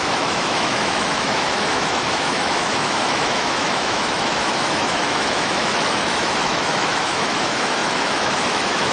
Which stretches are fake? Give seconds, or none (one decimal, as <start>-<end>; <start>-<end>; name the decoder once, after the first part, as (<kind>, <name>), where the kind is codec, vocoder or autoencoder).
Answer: 0.0-8.9 (autoencoder, DAC-VAE)